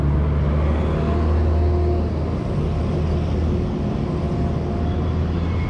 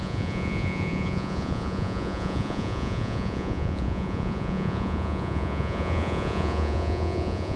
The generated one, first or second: second